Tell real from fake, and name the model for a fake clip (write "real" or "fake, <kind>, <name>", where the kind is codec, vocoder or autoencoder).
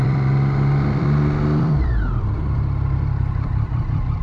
fake, vocoder, BigVGAN v2